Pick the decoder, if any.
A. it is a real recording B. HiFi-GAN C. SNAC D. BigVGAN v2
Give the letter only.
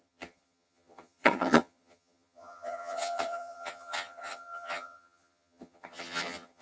B